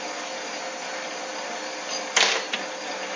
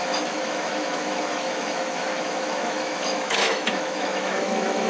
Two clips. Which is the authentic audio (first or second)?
first